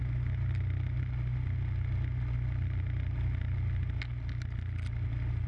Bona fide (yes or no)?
yes